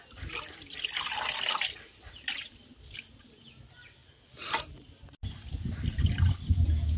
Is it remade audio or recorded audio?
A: recorded